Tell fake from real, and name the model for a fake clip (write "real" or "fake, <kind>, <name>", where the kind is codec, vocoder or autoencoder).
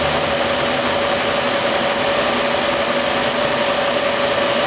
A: real